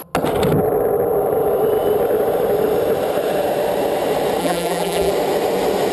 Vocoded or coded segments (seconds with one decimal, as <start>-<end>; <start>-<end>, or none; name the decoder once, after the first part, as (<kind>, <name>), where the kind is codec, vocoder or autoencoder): 4.4-5.1 (vocoder, BigVGAN v2)